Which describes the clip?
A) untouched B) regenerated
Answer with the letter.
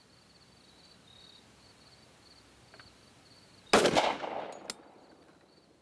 A